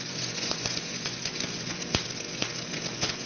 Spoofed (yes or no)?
yes